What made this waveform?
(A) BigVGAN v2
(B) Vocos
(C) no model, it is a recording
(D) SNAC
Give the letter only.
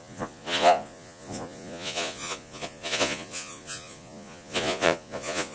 B